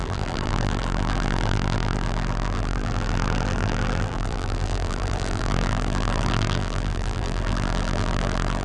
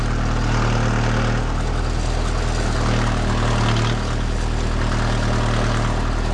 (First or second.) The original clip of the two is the second